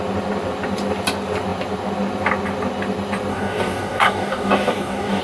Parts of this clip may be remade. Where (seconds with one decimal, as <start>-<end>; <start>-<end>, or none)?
3.3-5.2